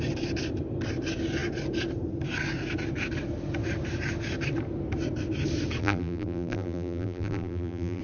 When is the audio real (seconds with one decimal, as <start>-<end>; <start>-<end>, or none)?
0.0-5.8